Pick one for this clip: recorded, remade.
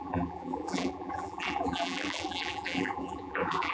remade